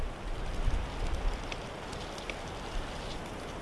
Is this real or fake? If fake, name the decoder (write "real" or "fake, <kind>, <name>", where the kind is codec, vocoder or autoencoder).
real